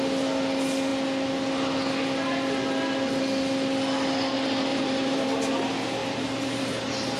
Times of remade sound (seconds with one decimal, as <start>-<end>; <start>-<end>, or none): 4.7-5.5; 6.0-7.2